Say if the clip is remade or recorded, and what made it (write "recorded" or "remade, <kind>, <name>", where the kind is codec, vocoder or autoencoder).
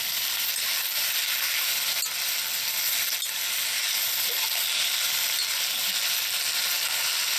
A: recorded